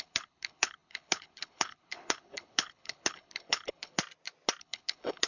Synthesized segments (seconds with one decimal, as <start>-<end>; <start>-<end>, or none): 0.0-4.0; 4.6-5.3